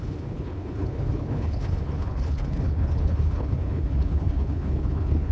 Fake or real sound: fake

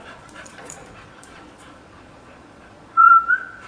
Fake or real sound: fake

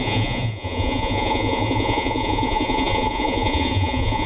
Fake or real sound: fake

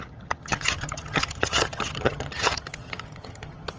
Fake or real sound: fake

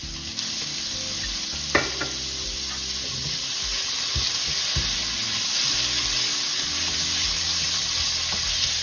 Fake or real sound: real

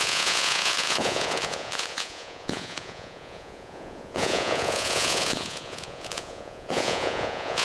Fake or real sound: fake